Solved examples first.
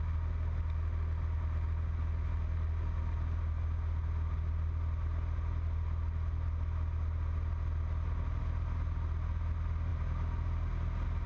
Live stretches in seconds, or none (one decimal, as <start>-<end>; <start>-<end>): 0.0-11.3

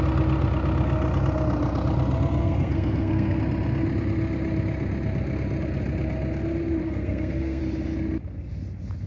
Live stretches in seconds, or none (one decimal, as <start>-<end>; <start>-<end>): 0.0-2.4; 3.4-6.8; 7.6-9.1

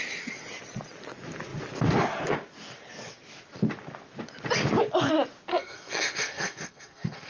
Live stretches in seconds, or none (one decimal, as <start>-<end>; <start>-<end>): 0.0-5.5